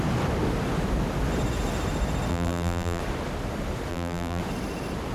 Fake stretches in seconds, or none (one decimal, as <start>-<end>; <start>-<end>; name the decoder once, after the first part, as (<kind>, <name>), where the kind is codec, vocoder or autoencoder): 2.3-3.0 (vocoder, BigVGAN v2); 3.9-4.4